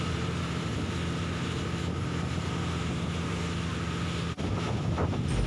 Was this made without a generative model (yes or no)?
yes